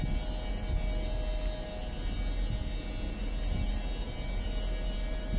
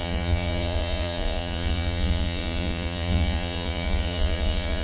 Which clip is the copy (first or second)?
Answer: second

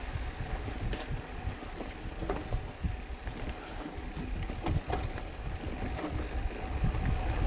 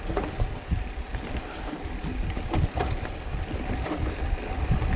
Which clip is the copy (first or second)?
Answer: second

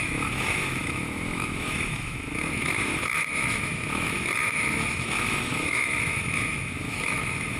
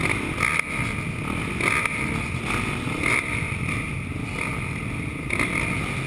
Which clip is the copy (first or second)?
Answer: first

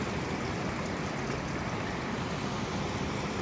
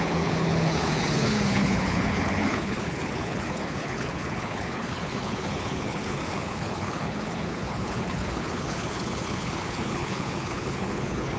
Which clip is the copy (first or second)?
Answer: second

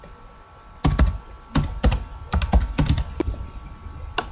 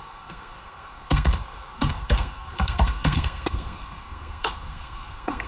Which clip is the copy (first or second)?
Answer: second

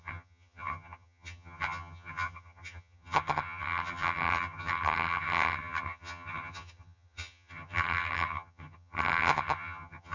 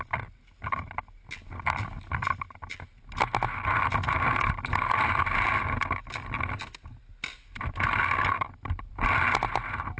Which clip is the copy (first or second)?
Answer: first